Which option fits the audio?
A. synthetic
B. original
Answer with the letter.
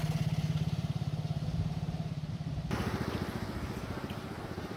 A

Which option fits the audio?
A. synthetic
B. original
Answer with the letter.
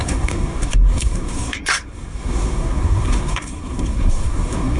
A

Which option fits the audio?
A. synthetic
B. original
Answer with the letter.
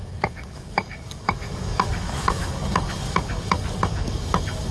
A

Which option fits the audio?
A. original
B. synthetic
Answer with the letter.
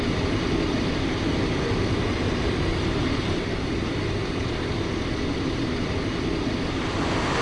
A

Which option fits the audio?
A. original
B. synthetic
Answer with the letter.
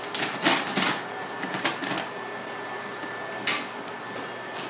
A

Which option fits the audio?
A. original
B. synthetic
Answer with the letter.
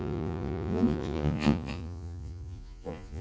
B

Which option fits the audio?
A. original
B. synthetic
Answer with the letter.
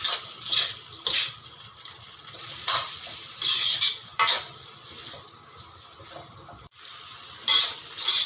B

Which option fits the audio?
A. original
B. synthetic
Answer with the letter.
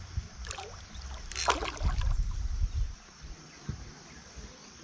A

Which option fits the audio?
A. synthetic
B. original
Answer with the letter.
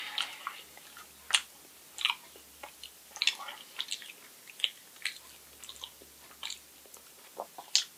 B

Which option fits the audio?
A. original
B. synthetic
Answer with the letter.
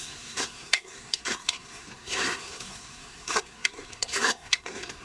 B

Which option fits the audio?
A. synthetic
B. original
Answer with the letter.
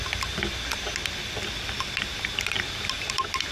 B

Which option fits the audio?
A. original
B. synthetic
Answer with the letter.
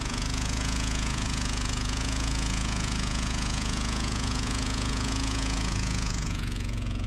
B